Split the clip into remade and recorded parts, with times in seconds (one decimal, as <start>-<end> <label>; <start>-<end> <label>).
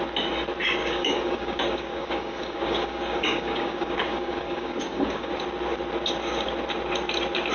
0.0-0.8 recorded; 0.8-5.3 remade; 5.3-7.5 recorded